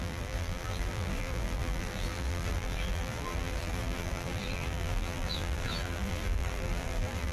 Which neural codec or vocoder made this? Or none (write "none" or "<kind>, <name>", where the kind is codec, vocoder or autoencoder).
vocoder, BigVGAN v2